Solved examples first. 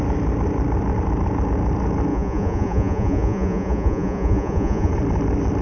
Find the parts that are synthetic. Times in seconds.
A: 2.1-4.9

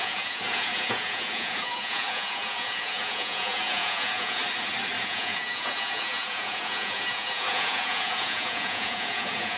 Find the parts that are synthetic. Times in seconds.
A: 0.0-4.4; 5.0-9.6

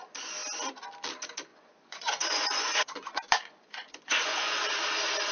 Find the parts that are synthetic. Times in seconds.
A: 1.5-4.7

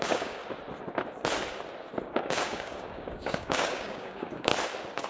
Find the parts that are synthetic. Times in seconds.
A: 0.0-0.4; 2.0-4.5

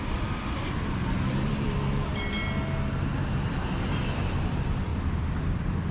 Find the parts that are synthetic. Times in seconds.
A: 0.0-2.1; 4.2-4.9; 5.4-5.9

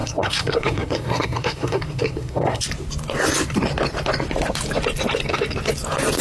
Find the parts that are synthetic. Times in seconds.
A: 0.0-2.6

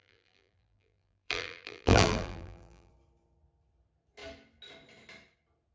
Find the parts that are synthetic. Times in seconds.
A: 0.0-2.9

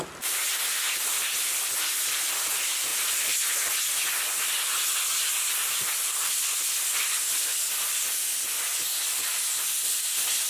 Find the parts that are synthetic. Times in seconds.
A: none